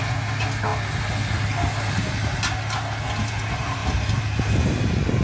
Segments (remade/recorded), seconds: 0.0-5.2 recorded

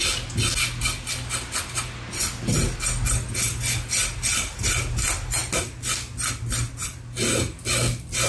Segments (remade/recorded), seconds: 0.0-8.3 recorded

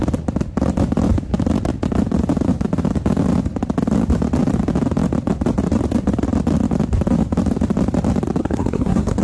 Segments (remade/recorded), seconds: 0.0-8.4 recorded; 8.4-9.2 remade